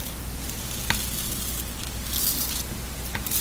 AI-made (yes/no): no